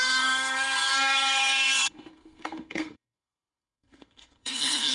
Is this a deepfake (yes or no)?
yes